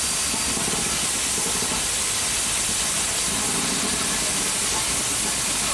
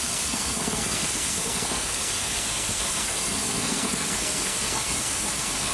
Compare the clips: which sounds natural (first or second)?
first